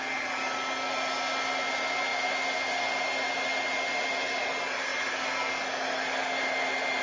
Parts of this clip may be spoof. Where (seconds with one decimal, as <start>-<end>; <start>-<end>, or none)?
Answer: none